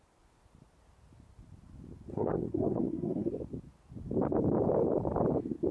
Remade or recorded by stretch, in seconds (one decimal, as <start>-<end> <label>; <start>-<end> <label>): 0.0-2.1 recorded; 2.1-3.3 remade; 3.3-5.7 recorded